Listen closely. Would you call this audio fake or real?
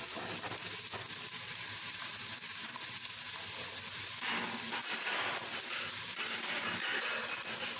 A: real